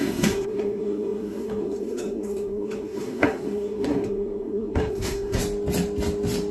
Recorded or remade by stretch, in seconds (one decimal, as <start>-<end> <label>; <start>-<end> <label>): 0.0-5.4 remade; 5.4-6.5 recorded

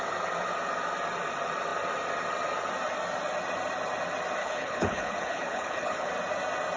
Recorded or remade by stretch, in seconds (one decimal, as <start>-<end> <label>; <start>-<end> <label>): 0.0-4.4 recorded; 4.4-6.1 remade; 6.1-6.8 recorded

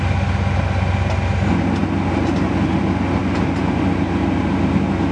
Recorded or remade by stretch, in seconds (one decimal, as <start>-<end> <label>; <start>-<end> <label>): 0.0-5.1 recorded

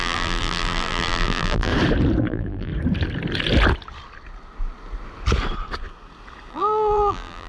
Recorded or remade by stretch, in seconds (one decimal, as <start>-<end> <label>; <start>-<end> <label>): 0.0-1.7 remade; 1.7-2.2 recorded; 2.2-2.7 remade; 2.7-6.5 recorded; 6.5-7.5 remade

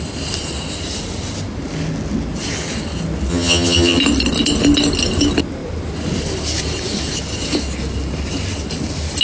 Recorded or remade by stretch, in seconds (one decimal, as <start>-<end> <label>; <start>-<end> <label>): 0.0-3.3 recorded; 3.3-4.0 remade; 4.0-9.2 recorded